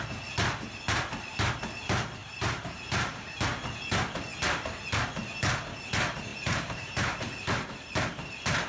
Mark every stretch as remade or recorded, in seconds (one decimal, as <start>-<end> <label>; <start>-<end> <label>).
0.0-2.2 recorded; 2.2-3.4 remade; 3.4-6.3 recorded; 6.3-7.7 remade; 7.7-8.7 recorded